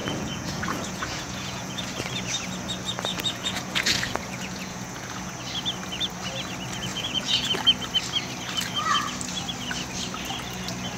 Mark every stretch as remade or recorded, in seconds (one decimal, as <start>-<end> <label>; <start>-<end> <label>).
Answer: 0.0-1.8 remade; 1.8-3.1 recorded; 3.1-5.3 remade; 5.3-6.9 recorded; 6.9-7.5 remade; 7.5-11.0 recorded